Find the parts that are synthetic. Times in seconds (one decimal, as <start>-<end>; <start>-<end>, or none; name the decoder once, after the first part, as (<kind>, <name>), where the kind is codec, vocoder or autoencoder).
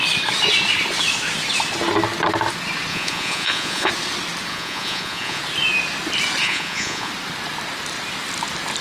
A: 2.9-3.9 (vocoder, Vocos); 4.5-5.4; 6.4-7.1